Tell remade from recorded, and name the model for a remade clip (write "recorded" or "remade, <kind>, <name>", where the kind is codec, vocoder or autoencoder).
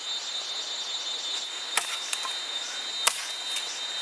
recorded